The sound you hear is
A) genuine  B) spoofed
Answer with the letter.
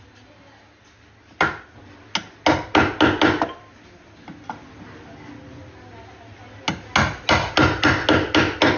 A